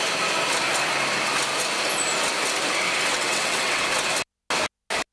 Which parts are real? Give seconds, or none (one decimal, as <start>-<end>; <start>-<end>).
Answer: 0.0-3.1; 3.8-5.1